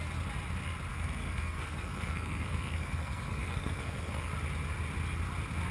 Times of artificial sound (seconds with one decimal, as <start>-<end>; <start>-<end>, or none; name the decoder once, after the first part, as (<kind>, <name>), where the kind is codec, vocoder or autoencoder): 0.9-4.3 (codec, SNAC)